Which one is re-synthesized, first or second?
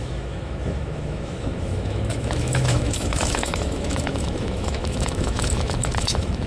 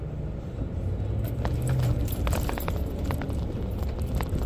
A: first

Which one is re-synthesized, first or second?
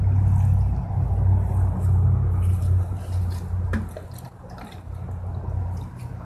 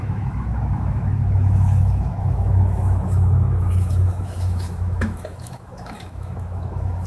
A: second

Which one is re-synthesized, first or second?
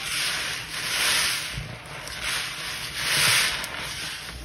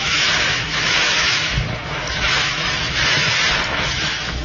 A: second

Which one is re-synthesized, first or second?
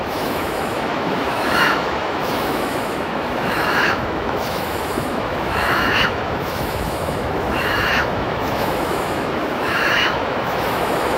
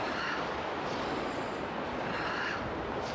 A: first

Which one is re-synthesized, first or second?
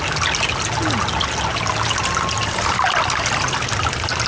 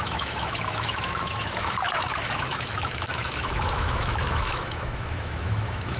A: second